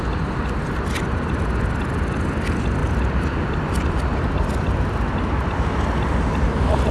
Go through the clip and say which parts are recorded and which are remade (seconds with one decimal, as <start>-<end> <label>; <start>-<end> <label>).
0.0-2.8 recorded; 2.8-4.4 remade; 4.4-6.9 recorded